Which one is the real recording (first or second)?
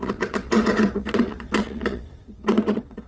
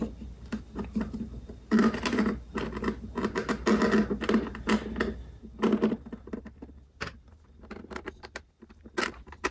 second